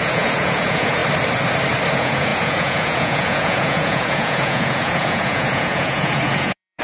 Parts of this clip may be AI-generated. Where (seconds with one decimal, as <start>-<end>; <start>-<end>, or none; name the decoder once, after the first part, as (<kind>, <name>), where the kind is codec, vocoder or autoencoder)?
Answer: 0.0-1.0 (vocoder, Vocos); 1.9-6.8